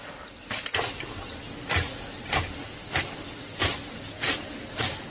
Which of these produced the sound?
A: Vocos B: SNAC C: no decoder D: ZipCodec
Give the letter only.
C